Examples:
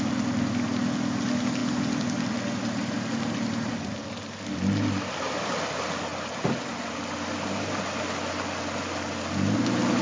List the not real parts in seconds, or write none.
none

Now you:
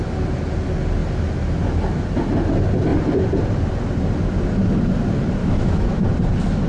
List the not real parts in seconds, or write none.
5.4-6.0 (autoencoder, DAC-VAE)

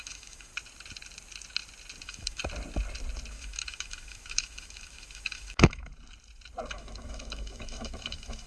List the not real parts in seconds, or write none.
0.0-0.5 (autoencoder, DAC-VAE); 2.0-2.4; 3.3-5.9; 6.7-8.5

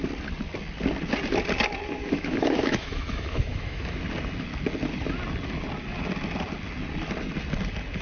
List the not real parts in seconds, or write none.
2.0-4.0 (autoencoder, DAC-VAE)

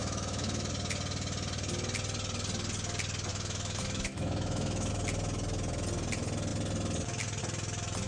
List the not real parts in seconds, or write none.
0.0-0.7 (autoencoder, DAC-VAE); 3.3-4.9